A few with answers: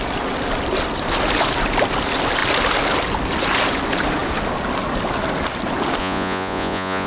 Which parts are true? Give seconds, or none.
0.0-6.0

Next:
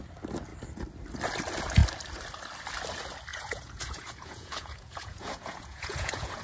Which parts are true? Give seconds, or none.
0.0-3.3